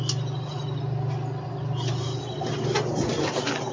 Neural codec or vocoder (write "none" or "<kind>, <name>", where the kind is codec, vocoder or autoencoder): none